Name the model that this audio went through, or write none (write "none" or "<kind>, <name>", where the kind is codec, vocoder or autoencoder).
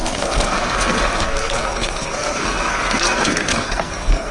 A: codec, SNAC